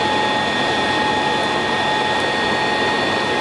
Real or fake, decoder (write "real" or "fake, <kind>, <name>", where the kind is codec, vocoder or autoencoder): real